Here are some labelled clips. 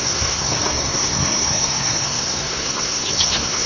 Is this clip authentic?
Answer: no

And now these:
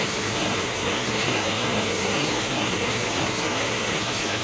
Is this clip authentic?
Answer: no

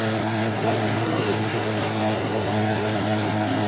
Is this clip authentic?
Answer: no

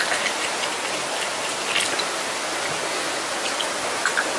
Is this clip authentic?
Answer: yes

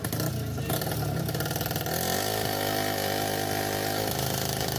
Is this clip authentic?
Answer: yes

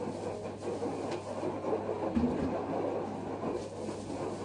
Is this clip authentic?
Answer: yes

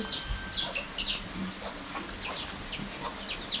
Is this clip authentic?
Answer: yes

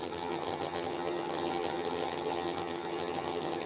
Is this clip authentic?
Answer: no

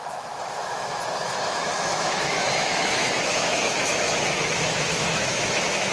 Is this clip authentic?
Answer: no